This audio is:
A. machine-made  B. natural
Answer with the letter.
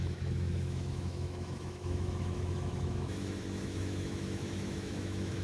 A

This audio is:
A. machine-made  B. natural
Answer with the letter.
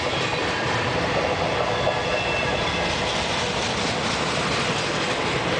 B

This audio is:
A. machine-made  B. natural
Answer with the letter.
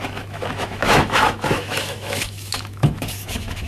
A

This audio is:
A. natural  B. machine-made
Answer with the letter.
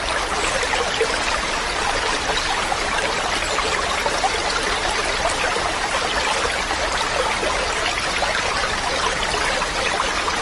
A